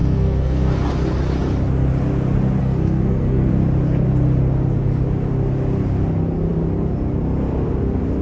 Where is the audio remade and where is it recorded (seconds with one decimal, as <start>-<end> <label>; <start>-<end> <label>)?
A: 0.0-0.7 remade; 0.7-2.6 recorded; 2.6-3.5 remade; 3.5-8.2 recorded